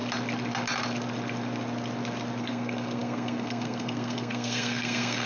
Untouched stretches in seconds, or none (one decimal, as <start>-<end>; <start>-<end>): 0.0-2.4